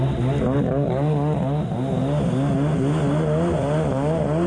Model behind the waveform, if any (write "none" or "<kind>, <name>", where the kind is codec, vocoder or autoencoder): none